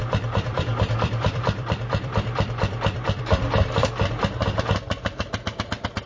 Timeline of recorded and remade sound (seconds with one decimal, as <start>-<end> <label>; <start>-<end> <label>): 0.0-3.7 remade; 3.7-6.1 recorded